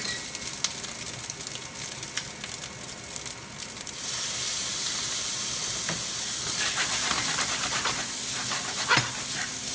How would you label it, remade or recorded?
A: recorded